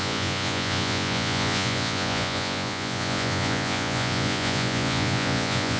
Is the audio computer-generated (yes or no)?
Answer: yes